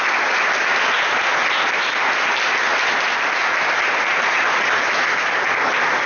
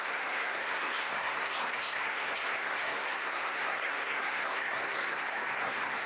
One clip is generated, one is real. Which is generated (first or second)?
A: second